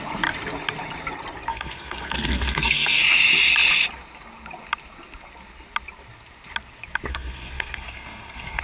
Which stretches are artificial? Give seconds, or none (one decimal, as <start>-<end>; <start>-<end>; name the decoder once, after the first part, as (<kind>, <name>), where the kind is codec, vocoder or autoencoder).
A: 1.5-3.0 (codec, SNAC); 7.1-8.6